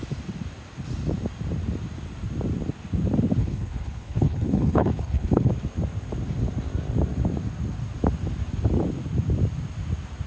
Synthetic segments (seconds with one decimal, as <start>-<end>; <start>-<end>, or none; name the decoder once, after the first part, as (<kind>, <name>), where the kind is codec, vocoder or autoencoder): 3.4-5.5 (codec, HILCodec)